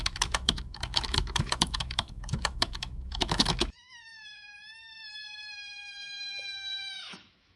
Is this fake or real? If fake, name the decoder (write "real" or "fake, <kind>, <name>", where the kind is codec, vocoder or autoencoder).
fake, autoencoder, DAC-VAE